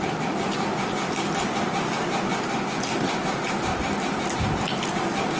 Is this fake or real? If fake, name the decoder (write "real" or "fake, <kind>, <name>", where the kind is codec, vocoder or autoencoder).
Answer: real